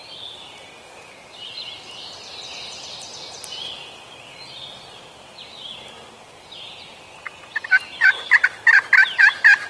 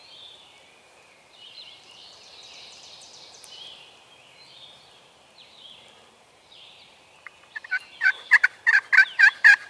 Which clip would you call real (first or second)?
first